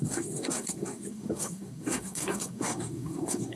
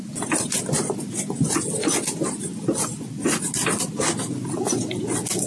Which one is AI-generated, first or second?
first